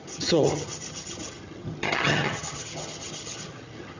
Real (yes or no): no